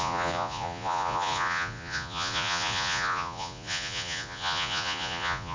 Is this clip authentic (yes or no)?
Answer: no